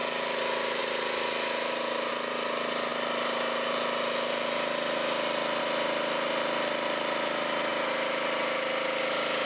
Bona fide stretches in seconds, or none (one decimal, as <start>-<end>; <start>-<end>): 0.0-9.5